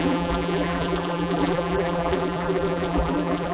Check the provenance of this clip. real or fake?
fake